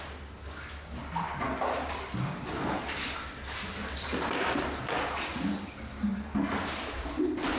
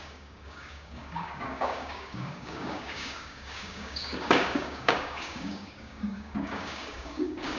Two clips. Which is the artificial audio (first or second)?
second